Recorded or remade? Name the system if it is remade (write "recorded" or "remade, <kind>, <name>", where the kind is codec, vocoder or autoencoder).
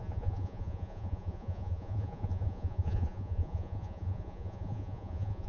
remade, vocoder, Vocos